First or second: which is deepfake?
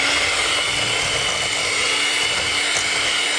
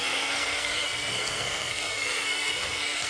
second